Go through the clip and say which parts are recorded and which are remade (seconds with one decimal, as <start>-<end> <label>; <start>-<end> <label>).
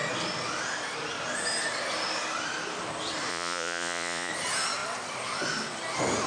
0.0-3.3 recorded; 3.3-4.3 remade; 4.3-6.3 recorded